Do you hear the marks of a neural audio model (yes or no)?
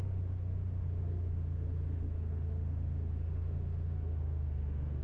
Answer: yes